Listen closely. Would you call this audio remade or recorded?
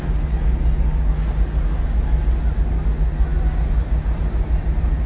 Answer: recorded